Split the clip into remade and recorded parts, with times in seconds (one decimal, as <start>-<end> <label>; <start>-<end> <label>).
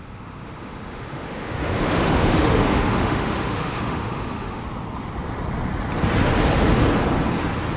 0.0-4.6 remade; 4.6-7.8 recorded